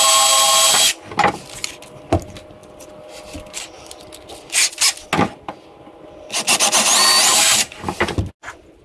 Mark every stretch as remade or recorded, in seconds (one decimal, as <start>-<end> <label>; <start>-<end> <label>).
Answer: 0.0-7.3 recorded; 7.3-8.2 remade; 8.2-8.8 recorded